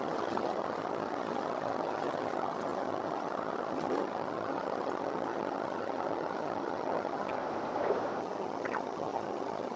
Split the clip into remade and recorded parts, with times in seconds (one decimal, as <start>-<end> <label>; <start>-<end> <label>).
0.0-7.4 remade; 7.4-8.2 recorded; 8.2-9.8 remade